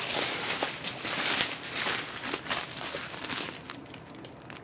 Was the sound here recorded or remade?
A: recorded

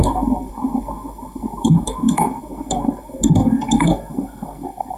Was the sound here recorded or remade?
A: remade